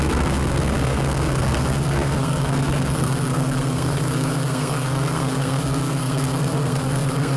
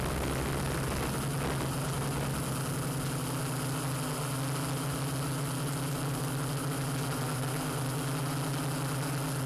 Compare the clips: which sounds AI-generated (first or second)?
first